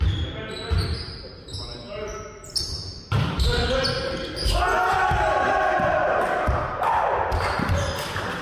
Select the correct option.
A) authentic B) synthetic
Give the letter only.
A